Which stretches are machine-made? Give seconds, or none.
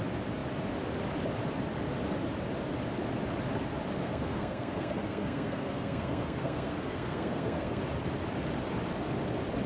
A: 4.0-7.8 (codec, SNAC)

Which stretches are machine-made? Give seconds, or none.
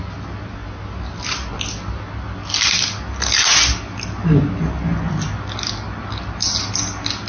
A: none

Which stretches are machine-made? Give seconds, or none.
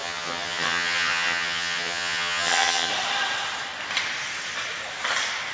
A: 0.0-2.9 (vocoder, HiFi-GAN)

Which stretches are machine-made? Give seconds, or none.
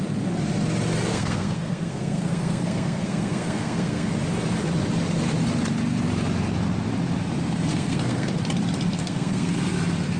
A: 1.1-4.1 (codec, SNAC); 7.7-8.3; 9.0-9.5